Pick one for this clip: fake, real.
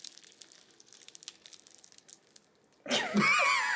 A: real